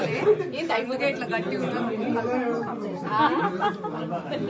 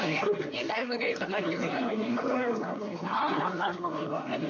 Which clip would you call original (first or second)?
first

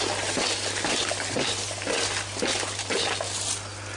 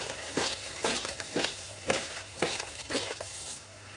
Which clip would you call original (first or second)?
first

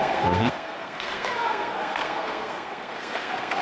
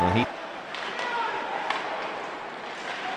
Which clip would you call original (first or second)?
second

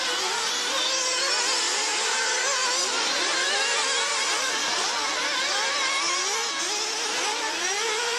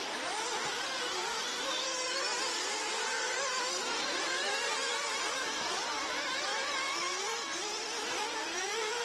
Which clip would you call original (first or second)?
first